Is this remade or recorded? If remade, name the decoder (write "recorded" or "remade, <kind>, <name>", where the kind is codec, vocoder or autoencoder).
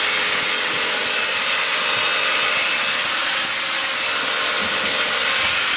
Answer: recorded